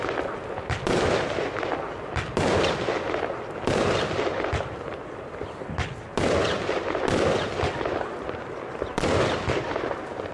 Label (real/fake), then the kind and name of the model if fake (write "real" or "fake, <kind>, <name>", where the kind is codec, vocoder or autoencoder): real